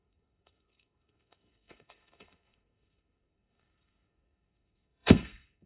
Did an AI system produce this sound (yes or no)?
yes